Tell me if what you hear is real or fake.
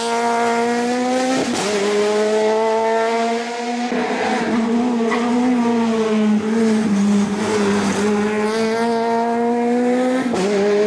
real